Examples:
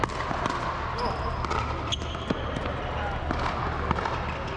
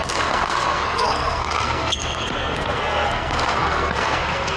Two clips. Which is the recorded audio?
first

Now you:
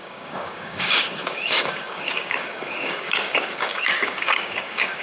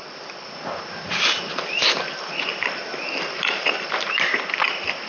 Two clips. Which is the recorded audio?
second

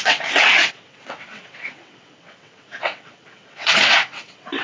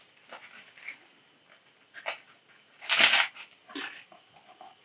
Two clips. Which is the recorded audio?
second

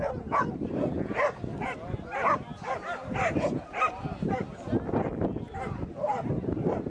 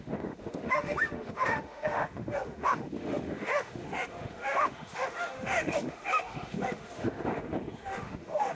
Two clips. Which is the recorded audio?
first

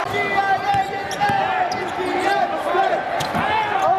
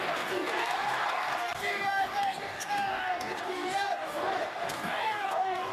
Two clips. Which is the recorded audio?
first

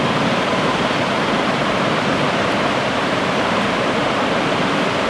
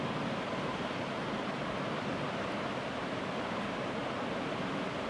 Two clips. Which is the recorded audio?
second